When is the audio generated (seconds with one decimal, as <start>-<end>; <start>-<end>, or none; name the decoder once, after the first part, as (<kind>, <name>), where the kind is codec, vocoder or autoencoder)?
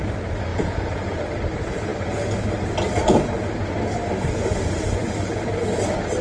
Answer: 0.5-1.2 (vocoder, Vocos)